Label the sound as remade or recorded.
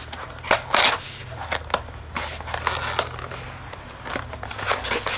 recorded